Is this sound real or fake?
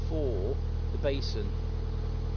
real